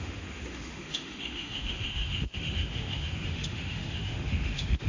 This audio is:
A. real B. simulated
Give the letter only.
B